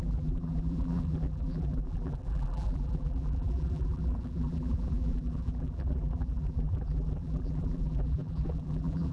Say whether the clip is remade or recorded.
remade